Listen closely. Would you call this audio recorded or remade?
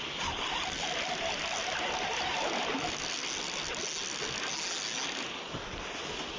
recorded